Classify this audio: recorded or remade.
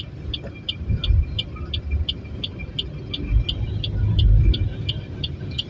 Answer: recorded